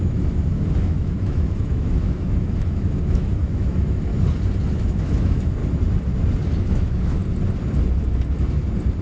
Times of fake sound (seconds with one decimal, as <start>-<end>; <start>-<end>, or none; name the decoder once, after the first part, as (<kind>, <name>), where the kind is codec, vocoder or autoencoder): 0.0-4.1 (autoencoder, DAC-VAE); 4.8-5.6; 6.6-7.2

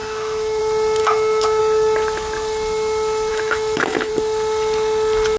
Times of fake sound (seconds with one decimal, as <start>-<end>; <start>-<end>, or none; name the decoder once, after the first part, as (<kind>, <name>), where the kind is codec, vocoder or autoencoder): 0.0-0.6 (autoencoder, DAC-VAE); 1.0-1.6; 3.3-4.1

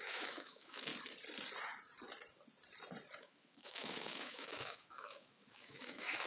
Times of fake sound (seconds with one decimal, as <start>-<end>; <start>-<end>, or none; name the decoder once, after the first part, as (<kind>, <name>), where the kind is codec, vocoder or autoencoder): 0.0-0.9 (autoencoder, DAC-VAE); 3.2-6.3